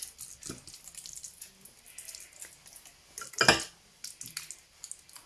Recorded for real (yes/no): yes